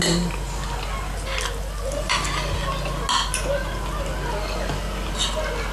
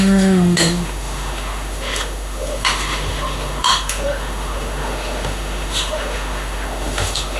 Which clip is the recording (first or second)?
first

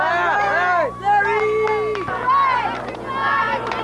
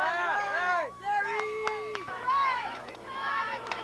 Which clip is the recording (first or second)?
first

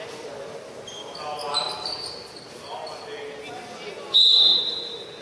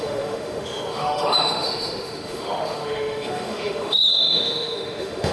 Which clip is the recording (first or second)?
first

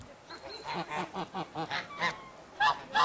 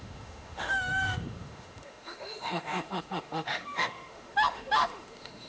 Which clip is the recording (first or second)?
first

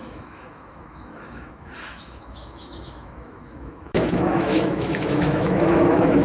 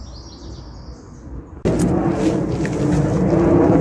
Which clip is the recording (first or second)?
second